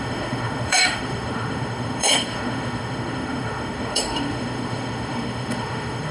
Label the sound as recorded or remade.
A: remade